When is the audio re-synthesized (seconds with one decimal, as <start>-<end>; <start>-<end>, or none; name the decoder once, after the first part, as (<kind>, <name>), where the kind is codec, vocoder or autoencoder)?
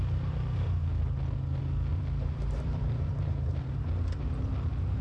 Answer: 1.9-3.8 (vocoder, BigVGAN v2)